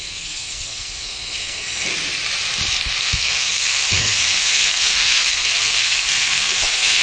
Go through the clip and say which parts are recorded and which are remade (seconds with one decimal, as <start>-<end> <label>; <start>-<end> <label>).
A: 0.0-1.9 remade; 1.9-3.0 recorded; 3.0-7.0 remade